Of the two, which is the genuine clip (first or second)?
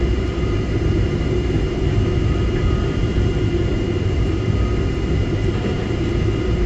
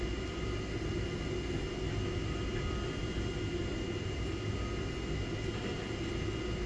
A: second